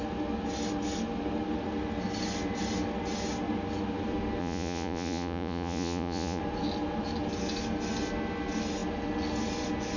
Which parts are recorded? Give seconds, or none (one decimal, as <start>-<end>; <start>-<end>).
0.0-4.4; 6.4-10.0